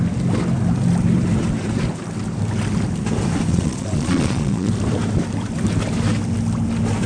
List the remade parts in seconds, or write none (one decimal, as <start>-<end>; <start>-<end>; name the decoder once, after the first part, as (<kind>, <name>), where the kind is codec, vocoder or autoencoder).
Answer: 3.5-4.7 (vocoder, Vocos)